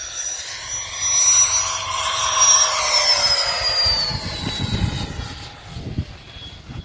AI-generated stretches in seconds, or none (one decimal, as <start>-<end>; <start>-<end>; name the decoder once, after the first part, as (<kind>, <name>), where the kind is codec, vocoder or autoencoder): 0.0-0.5 (vocoder, BigVGAN v2); 2.0-3.6